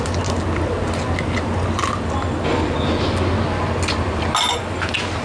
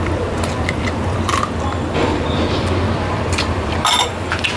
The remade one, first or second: second